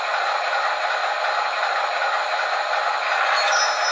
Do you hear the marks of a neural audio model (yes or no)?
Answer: no